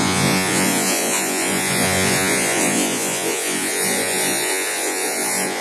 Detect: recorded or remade remade